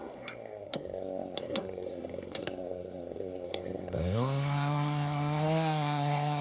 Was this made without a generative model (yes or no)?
no